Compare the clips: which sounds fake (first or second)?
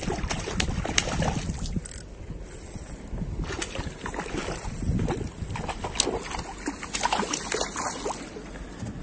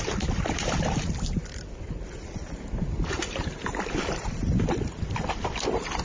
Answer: second